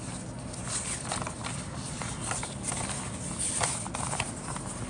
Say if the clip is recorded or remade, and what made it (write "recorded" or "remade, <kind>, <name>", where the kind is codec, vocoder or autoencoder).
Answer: recorded